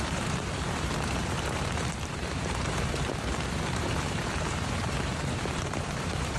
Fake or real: fake